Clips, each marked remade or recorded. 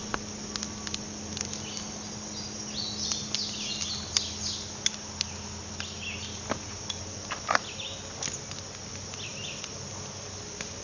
recorded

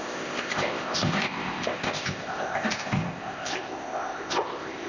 remade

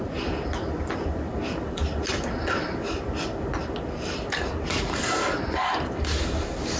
recorded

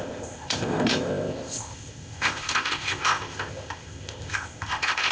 remade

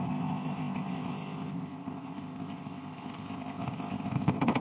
remade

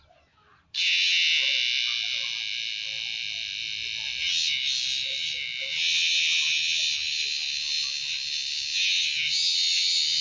recorded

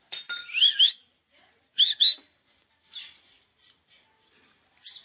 recorded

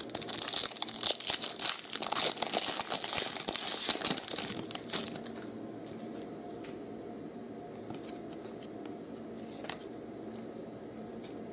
recorded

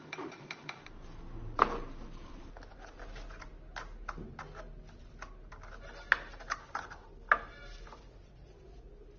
recorded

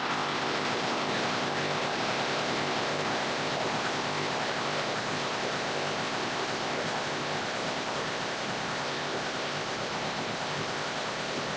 remade